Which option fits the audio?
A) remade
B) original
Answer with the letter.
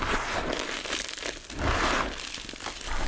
B